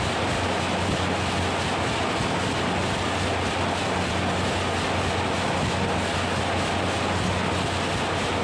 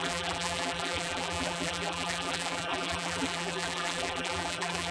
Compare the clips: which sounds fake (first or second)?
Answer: second